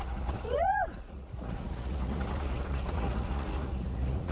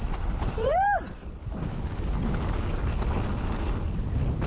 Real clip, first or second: second